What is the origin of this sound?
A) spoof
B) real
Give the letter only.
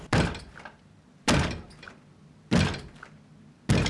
B